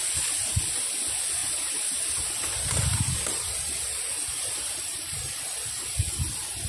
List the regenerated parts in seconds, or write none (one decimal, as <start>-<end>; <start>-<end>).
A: 1.4-5.4